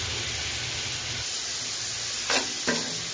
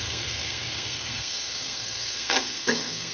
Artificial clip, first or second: second